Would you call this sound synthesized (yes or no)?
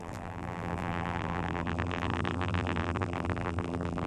yes